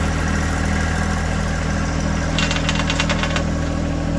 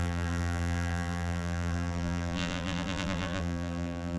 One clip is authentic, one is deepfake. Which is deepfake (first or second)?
second